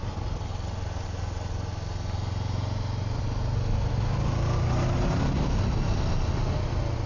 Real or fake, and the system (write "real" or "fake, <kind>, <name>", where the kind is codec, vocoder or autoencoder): real